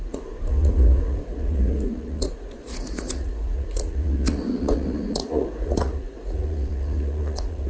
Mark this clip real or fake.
fake